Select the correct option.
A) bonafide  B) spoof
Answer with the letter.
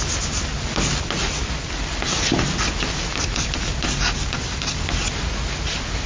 A